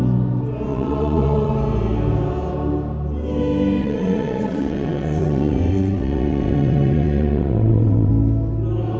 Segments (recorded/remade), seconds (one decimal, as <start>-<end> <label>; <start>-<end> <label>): 0.0-0.7 recorded; 0.7-1.5 remade; 1.5-3.8 recorded; 3.8-8.1 remade; 8.1-9.0 recorded